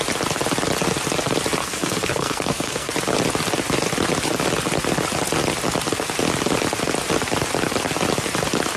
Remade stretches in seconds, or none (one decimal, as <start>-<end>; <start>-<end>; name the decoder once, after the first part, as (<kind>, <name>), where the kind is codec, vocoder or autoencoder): 1.6-2.9 (codec, SNAC)